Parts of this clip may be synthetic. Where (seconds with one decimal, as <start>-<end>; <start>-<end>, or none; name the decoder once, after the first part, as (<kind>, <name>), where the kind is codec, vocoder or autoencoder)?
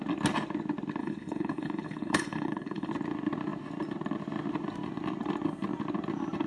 1.0-2.9 (codec, HILCodec)